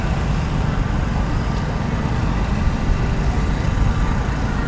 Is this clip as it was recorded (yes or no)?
yes